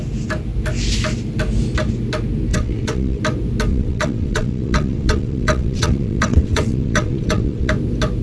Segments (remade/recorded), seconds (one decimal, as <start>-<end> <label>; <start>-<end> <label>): 0.0-2.5 recorded; 2.5-3.2 remade; 3.2-3.7 recorded; 3.7-7.7 remade; 7.7-8.2 recorded